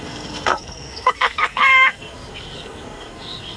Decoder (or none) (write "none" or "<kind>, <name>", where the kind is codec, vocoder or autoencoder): codec, SNAC